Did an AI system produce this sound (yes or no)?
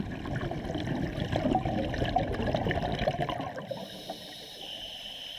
no